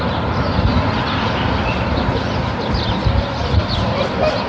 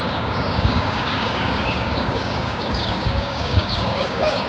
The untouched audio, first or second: first